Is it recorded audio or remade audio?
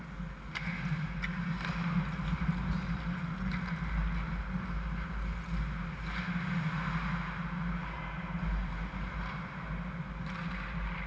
recorded